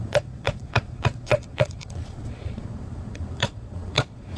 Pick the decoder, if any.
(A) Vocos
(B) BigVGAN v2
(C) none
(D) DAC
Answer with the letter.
A